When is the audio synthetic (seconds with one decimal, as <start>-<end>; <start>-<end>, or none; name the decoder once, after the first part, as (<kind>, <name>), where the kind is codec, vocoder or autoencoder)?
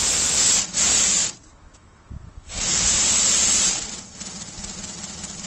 1.5-2.9 (autoencoder, DAC-VAE)